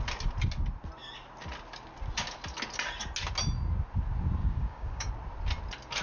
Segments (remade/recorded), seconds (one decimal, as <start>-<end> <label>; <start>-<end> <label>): 0.0-4.4 recorded; 4.4-5.1 remade; 5.1-6.0 recorded